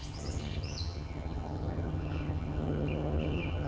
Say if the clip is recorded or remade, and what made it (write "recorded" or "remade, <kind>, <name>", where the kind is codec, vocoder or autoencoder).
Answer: remade, vocoder, HiFi-GAN